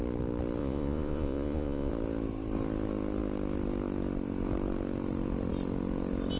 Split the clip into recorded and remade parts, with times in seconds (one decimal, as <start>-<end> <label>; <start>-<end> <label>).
0.0-0.6 recorded; 0.6-1.9 remade; 1.9-6.4 recorded